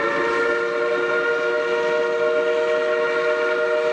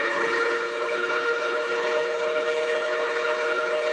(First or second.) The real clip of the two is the first